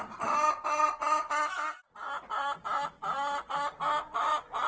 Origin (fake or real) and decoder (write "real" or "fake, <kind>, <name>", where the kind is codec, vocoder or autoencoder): real